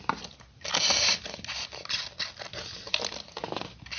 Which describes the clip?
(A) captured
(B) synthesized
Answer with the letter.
A